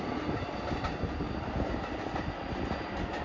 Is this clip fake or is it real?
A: real